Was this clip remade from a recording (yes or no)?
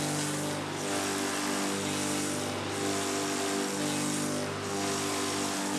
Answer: no